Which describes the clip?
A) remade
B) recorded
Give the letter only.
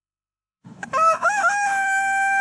A